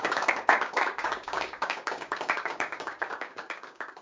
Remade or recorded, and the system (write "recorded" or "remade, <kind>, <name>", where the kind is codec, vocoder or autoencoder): remade, codec, DAC